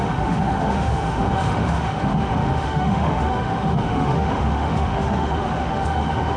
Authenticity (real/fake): fake